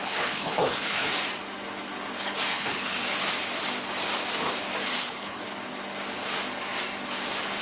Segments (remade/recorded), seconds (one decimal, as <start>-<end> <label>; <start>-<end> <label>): 0.0-1.1 remade; 1.1-2.5 recorded; 2.5-3.0 remade; 3.0-4.9 recorded; 4.9-5.4 remade; 5.4-7.6 recorded